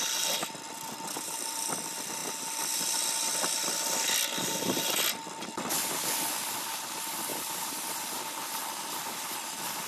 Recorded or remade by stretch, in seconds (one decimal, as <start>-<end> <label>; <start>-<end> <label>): 0.0-7.3 recorded; 7.3-9.9 remade